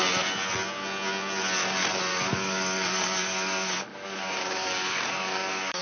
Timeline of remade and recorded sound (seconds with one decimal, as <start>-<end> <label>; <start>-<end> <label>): 0.0-2.1 recorded; 2.1-5.8 remade